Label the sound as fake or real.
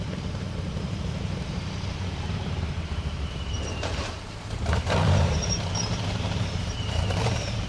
fake